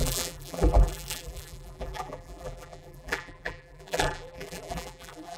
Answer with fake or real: fake